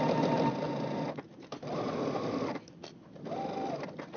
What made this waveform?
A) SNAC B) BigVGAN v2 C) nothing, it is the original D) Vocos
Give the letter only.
C